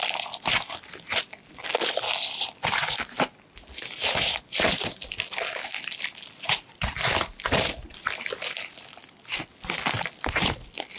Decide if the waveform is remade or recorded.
recorded